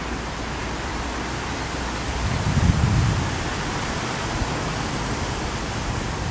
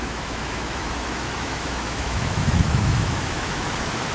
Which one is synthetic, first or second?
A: second